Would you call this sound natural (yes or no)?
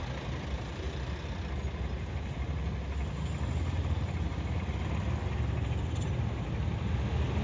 yes